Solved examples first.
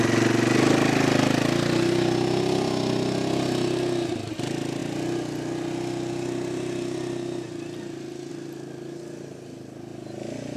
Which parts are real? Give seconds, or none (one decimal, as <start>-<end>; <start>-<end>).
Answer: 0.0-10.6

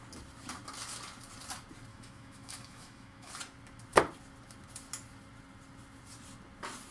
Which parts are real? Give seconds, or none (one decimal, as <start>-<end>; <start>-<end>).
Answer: 0.0-1.9; 3.3-6.9

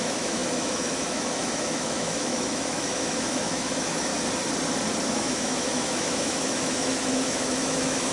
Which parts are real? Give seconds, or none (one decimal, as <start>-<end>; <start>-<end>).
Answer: 4.1-5.1

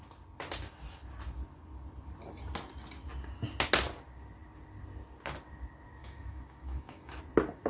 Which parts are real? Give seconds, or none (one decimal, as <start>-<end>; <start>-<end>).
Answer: 0.0-6.0; 7.2-7.7